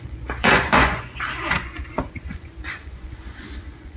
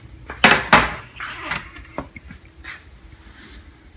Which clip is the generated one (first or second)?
first